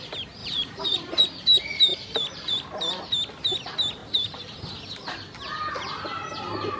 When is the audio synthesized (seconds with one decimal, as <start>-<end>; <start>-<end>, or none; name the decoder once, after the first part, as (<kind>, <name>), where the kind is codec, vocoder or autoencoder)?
0.4-1.2 (vocoder, BigVGAN v2); 1.9-3.0; 4.0-4.7